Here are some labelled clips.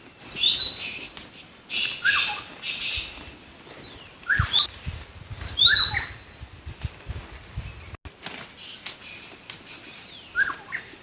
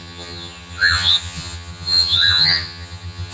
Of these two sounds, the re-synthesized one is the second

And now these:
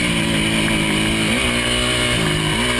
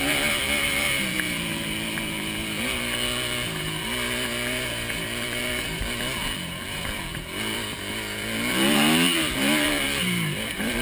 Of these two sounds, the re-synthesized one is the second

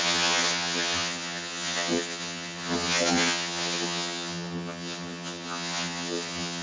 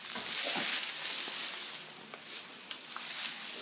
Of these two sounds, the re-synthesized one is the first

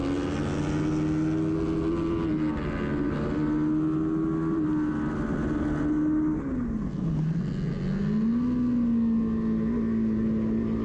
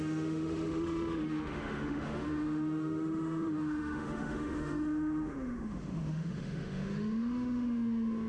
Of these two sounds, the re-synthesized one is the second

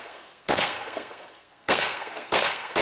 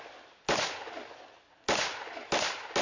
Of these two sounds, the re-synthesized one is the first